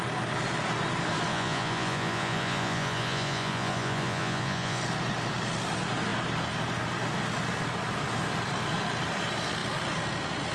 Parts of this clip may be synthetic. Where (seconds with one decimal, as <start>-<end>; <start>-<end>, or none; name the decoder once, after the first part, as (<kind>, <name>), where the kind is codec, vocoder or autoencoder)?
1.3-4.8 (vocoder, Vocos)